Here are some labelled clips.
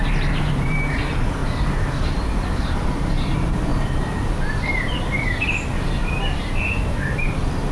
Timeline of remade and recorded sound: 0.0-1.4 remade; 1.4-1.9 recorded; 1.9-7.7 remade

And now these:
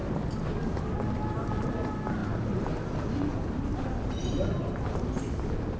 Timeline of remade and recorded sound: 0.0-2.2 recorded; 2.2-4.8 remade; 4.8-5.8 recorded

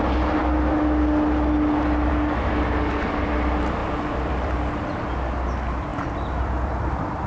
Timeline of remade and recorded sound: 0.0-3.8 recorded; 3.8-5.0 remade; 5.0-5.9 recorded; 5.9-7.3 remade

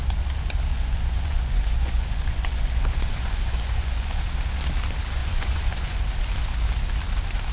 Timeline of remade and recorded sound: 0.0-0.7 recorded; 0.7-4.2 remade; 4.2-5.2 recorded; 5.2-6.0 remade; 6.0-7.5 recorded

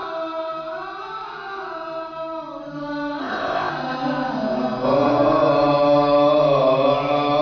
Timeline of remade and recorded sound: 0.0-3.2 recorded; 3.2-3.7 remade; 3.7-7.4 recorded

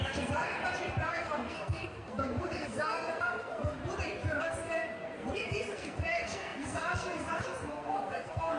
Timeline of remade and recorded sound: 0.0-0.6 remade; 0.6-1.1 recorded; 1.1-3.8 remade; 3.8-4.4 recorded; 4.4-8.6 remade

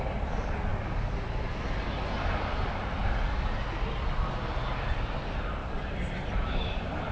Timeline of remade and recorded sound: 0.0-7.1 recorded

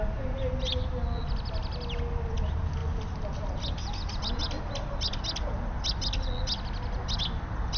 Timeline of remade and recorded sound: 0.0-7.8 recorded